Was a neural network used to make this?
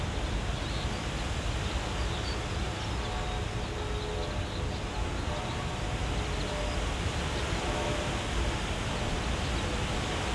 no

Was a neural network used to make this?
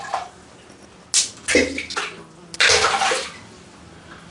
no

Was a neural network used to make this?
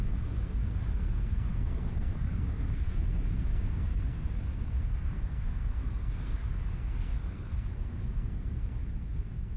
yes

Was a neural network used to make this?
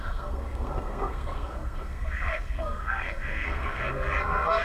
yes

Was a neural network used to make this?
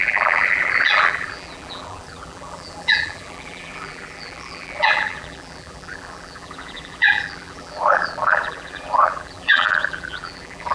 yes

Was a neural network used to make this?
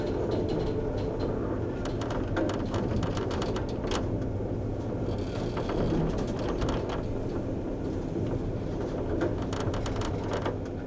no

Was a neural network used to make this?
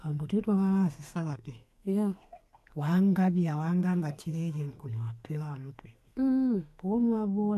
yes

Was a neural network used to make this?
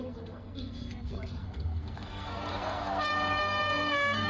yes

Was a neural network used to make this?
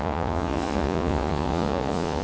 yes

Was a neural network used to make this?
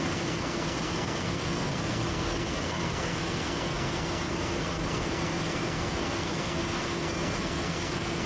yes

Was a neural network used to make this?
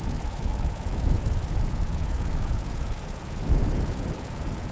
yes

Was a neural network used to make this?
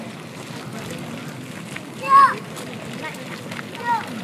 no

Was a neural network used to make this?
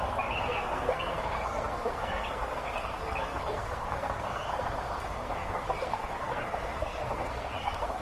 yes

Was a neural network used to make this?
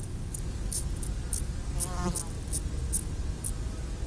no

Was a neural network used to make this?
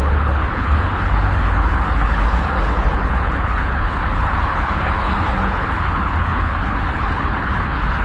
yes